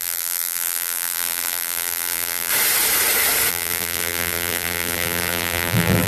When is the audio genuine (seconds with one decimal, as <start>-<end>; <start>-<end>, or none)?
2.5-3.5